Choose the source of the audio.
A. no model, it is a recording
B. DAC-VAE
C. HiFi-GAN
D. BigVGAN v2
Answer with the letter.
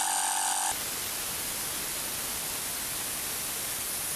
A